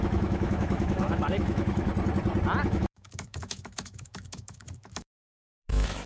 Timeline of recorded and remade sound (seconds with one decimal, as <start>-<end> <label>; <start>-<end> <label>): 0.0-1.9 remade; 1.9-2.7 recorded; 2.7-6.1 remade